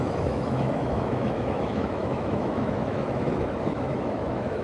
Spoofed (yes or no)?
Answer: yes